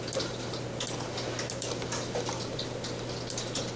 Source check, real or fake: real